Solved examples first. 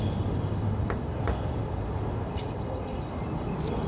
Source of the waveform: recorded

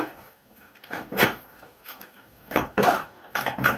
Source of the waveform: remade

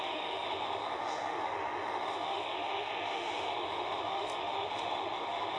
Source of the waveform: remade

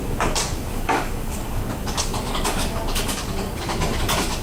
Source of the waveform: remade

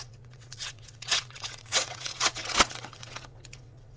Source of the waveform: remade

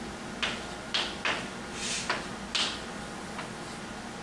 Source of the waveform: recorded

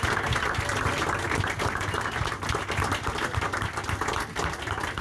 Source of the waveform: recorded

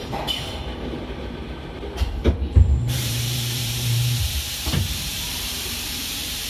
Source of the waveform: remade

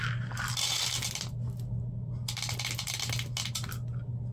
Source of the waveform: recorded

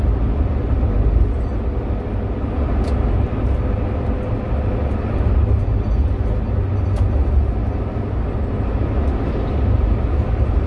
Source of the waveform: recorded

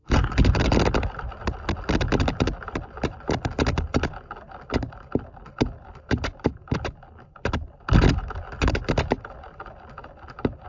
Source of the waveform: recorded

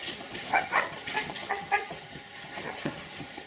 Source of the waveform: remade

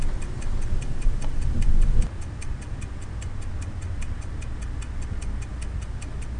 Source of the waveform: recorded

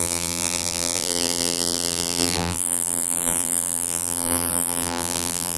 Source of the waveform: remade